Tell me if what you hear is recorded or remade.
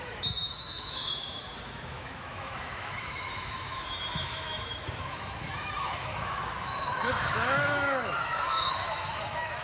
remade